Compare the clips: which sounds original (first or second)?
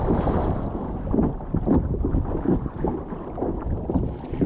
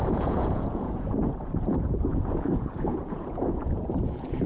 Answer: first